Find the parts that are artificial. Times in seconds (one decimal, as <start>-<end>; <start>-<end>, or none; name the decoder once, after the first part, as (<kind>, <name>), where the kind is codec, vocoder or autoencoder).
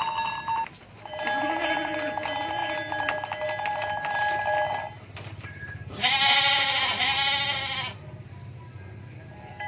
none